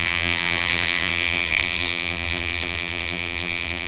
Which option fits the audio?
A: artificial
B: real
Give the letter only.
A